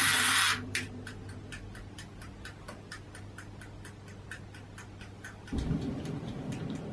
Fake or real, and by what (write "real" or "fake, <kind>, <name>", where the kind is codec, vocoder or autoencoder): real